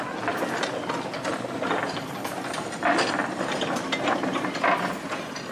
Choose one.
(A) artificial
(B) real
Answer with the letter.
B